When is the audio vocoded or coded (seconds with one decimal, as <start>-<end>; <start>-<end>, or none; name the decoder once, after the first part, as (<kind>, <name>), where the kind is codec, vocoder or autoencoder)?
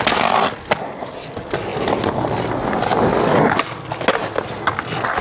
none